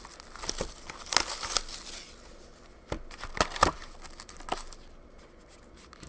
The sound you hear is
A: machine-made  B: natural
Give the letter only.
B